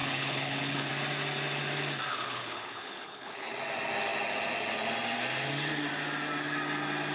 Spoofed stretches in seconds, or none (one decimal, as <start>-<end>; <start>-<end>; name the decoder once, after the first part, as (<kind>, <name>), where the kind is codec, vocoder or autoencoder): 0.0-0.9 (codec, HILCodec); 2.1-3.5